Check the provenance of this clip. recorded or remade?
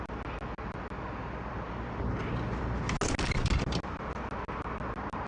recorded